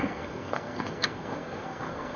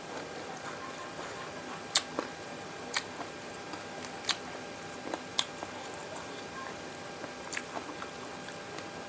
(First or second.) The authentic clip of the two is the second